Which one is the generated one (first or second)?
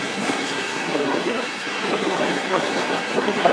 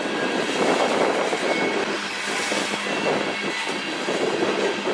first